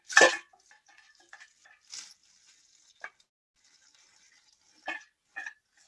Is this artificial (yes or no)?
no